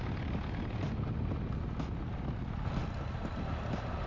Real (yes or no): yes